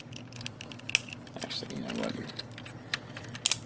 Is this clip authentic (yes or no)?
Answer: yes